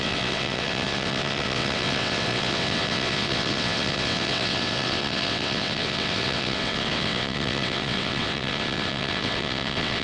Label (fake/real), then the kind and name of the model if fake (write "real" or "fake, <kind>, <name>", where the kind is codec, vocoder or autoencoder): fake, vocoder, WaveNeXt